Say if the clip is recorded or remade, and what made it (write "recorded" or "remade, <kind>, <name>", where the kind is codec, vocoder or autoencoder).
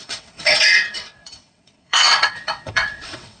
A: remade, vocoder, WaveNeXt